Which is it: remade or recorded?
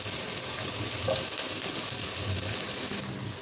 recorded